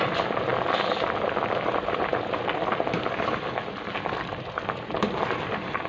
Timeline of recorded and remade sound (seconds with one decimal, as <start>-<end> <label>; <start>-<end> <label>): 0.0-5.9 recorded